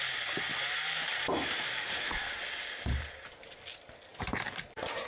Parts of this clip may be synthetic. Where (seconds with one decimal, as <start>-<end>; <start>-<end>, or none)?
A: 0.5-3.6; 4.1-5.1